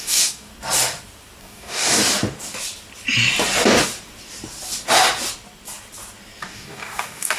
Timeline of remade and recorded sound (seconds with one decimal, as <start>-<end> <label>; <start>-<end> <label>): 0.0-0.5 remade; 0.5-1.4 recorded; 1.4-2.0 remade; 2.0-6.4 recorded; 6.4-7.4 remade